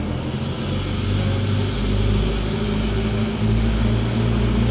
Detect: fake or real real